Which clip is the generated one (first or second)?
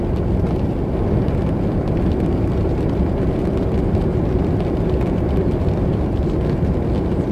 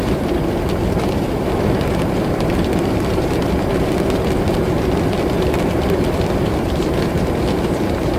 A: second